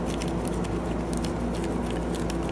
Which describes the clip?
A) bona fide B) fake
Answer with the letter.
A